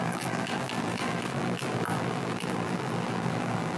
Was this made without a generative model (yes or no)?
no